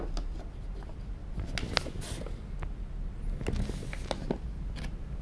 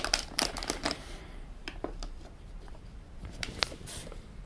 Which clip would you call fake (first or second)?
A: second